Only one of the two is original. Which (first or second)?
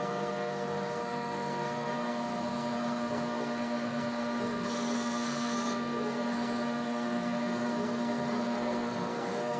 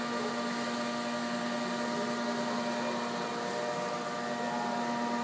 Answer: second